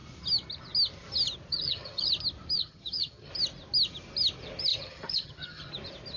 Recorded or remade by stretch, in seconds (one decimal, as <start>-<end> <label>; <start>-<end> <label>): 0.0-1.5 recorded; 1.5-2.1 remade; 2.1-2.6 recorded; 2.6-3.3 remade; 3.3-4.7 recorded; 4.7-5.7 remade; 5.7-6.2 recorded